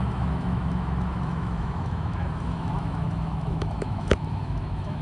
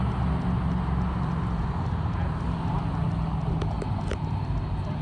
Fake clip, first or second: first